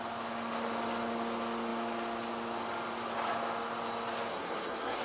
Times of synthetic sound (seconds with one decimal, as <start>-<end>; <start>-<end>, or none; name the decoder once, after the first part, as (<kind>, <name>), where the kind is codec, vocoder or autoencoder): 4.3-5.0 (codec, SNAC)